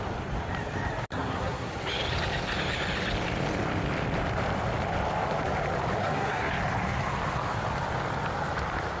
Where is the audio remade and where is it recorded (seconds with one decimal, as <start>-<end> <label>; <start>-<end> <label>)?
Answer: 0.0-1.1 recorded; 1.1-1.7 remade; 1.7-6.0 recorded; 6.0-6.5 remade; 6.5-9.0 recorded

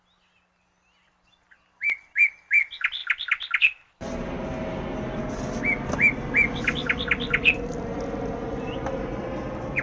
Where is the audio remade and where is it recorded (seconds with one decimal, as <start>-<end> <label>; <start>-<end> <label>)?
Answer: 0.0-9.8 recorded

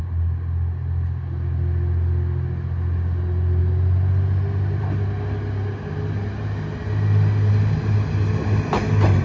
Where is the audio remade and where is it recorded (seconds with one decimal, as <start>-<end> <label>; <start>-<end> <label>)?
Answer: 0.0-9.2 recorded

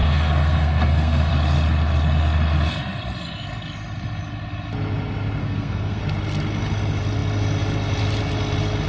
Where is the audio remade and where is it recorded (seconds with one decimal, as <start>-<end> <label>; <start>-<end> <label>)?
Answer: 0.0-1.3 remade; 1.3-5.4 recorded; 5.4-6.0 remade; 6.0-8.9 recorded

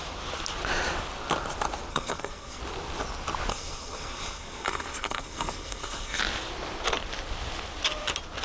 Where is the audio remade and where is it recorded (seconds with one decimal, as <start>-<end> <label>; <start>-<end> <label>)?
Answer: 0.0-1.9 recorded; 1.9-2.6 remade; 2.6-3.5 recorded; 3.5-6.2 remade; 6.2-8.4 recorded

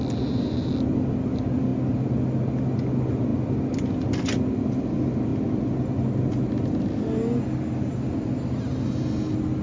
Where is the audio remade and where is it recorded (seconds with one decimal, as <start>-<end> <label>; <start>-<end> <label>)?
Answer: 0.0-9.6 recorded

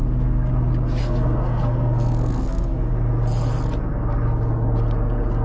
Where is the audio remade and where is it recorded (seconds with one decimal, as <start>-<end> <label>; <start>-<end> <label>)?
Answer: 0.0-0.5 remade; 0.5-1.0 recorded; 1.0-2.9 remade; 2.9-5.4 recorded